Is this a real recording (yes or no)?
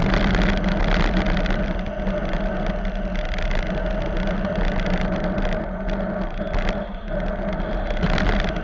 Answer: yes